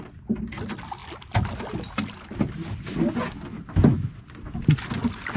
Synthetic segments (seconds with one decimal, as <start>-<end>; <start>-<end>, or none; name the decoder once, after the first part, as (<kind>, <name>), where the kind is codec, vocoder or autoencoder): none